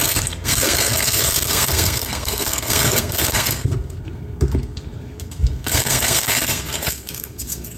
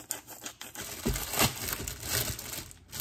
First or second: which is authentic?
second